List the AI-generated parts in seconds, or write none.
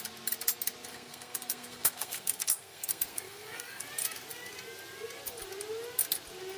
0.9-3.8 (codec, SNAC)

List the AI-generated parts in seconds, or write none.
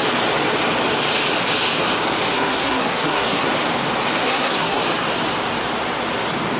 2.3-3.5 (codec, SNAC); 4.2-4.8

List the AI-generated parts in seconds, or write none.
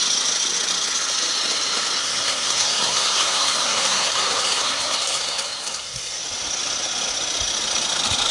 2.0-6.2 (codec, SNAC)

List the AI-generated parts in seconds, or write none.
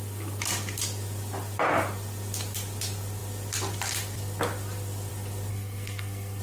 5.5-6.4 (codec, SNAC)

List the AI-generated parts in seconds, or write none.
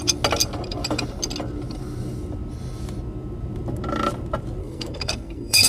4.6-5.7 (codec, SNAC)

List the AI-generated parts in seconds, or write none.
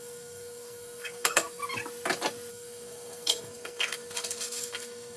0.0-1.6 (codec, SNAC); 2.5-5.2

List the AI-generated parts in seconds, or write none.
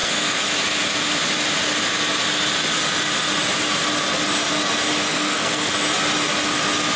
0.0-0.5 (codec, SNAC); 5.1-5.7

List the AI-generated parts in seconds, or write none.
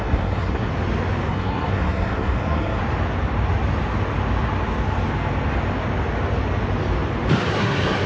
0.0-0.7 (codec, SNAC); 1.3-2.8; 7.5-8.1